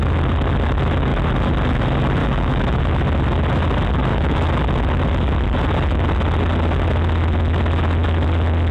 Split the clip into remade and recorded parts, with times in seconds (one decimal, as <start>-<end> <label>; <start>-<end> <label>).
0.0-2.2 recorded; 2.2-2.8 remade; 2.8-4.1 recorded; 4.1-4.6 remade; 4.6-8.7 recorded